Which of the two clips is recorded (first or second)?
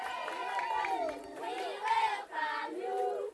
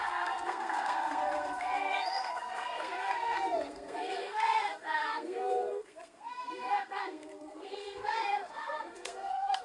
first